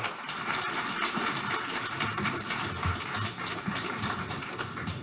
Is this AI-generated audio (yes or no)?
yes